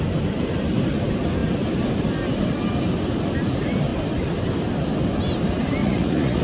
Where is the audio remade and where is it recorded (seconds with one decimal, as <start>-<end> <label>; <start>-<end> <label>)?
0.0-5.8 recorded; 5.8-6.4 remade